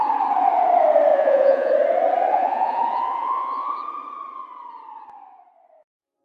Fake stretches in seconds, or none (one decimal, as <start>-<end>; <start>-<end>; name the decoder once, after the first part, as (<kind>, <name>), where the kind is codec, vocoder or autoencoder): 1.1-1.7 (vocoder, Vocos); 2.3-3.7